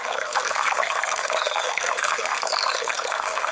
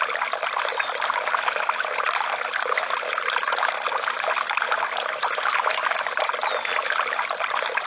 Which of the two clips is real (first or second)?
second